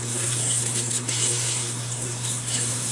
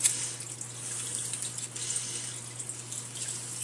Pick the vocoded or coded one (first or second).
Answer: first